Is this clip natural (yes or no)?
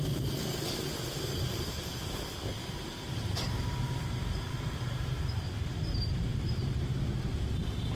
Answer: no